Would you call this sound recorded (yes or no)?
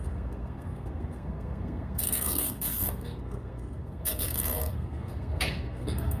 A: no